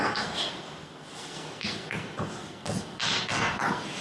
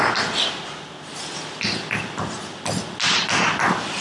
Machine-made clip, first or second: first